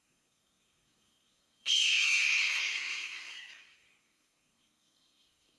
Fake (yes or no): yes